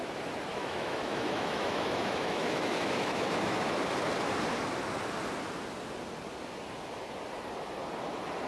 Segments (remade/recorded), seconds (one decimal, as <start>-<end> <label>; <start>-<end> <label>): 0.0-0.5 recorded; 0.5-3.9 remade; 3.9-8.5 recorded